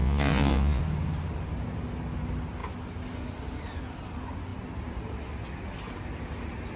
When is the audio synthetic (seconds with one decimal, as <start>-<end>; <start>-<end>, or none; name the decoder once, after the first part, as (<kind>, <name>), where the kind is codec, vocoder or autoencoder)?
0.0-0.8 (vocoder, Vocos)